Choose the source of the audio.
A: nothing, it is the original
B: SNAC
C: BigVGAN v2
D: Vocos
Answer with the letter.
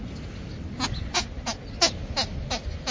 A